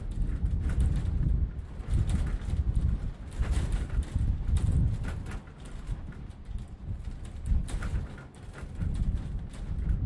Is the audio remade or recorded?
recorded